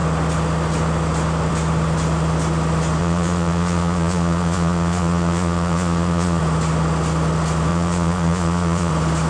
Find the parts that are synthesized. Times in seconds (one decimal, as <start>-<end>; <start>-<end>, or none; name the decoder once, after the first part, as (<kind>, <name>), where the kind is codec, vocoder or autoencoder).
3.0-6.4 (vocoder, Vocos); 7.7-8.9